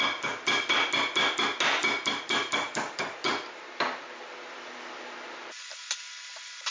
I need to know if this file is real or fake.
real